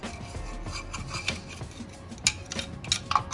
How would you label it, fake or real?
real